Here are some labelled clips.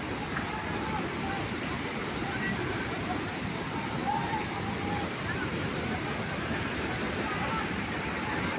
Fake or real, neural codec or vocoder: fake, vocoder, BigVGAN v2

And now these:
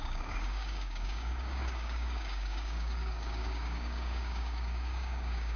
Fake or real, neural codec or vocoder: fake, codec, DAC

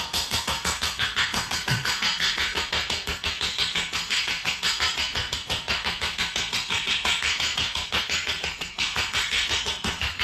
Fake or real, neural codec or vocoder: fake, codec, SNAC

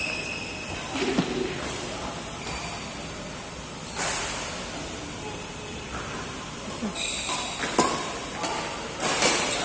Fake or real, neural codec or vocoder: real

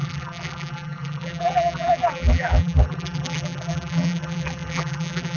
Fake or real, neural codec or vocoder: fake, vocoder, BigVGAN v2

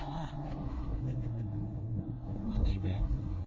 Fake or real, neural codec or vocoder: fake, codec, SNAC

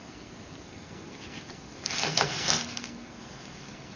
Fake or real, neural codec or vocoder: fake, codec, SNAC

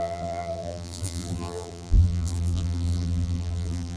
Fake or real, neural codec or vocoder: fake, vocoder, BigVGAN v2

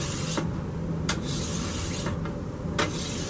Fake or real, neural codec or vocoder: real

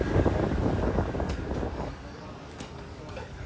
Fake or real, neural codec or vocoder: fake, codec, DAC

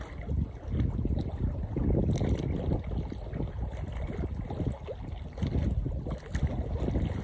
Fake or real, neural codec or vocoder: real